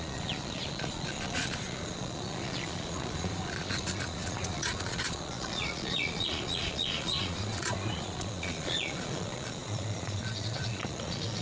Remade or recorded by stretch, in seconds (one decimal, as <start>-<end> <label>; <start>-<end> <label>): 0.0-11.4 remade